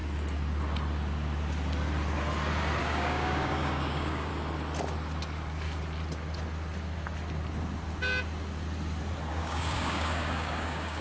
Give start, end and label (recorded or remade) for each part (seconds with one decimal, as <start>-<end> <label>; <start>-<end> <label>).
0.0-2.8 recorded; 2.8-4.3 remade; 4.3-9.3 recorded; 9.3-11.0 remade